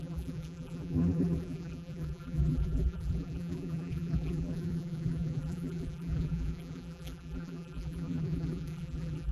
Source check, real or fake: fake